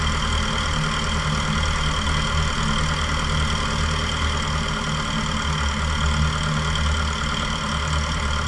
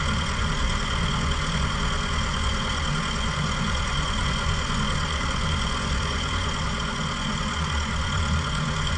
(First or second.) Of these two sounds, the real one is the first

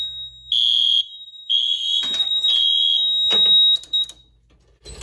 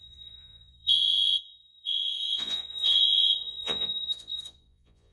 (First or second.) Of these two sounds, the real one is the first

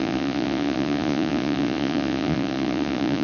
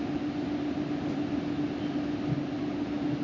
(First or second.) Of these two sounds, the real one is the second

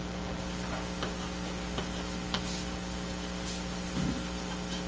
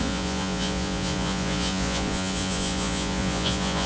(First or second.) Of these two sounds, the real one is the first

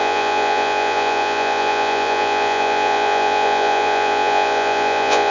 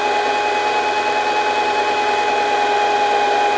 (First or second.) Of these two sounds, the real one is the second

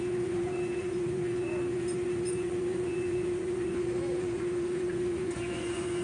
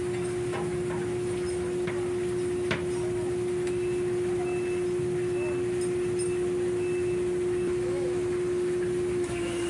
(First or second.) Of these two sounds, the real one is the second